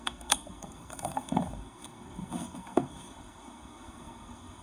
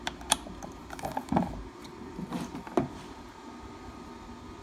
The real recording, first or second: second